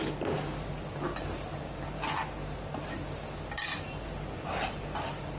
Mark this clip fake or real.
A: real